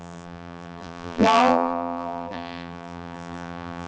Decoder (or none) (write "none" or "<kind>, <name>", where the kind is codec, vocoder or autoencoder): vocoder, BigVGAN v2